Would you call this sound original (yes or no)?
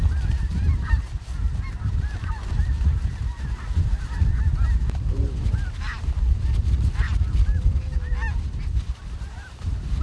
yes